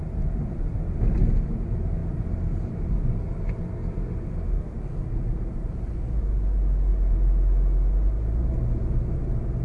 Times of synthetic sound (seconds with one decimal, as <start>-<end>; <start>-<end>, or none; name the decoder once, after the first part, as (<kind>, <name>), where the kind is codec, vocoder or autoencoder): none